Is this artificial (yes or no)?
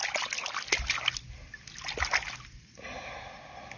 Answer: no